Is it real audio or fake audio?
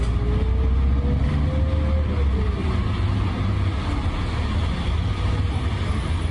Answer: real